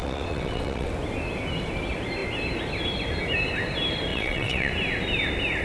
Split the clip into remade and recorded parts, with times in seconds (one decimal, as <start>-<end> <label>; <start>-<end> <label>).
0.0-0.9 remade; 0.9-4.1 recorded; 4.1-4.7 remade; 4.7-5.6 recorded